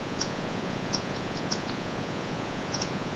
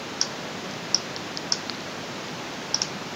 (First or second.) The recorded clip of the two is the second